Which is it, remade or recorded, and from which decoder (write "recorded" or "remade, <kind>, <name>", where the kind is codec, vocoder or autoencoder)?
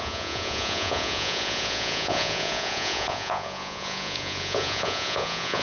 remade, vocoder, Vocos